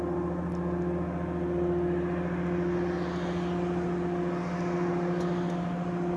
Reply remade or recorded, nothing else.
recorded